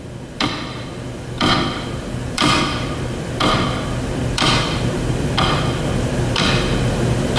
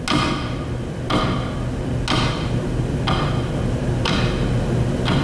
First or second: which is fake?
first